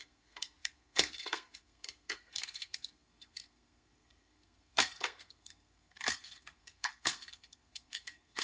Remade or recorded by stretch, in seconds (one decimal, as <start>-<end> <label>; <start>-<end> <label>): 0.0-8.4 remade